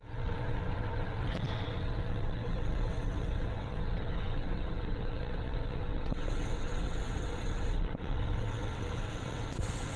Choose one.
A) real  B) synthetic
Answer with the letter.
B